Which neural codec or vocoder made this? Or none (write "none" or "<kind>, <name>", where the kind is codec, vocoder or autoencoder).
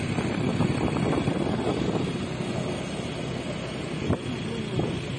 none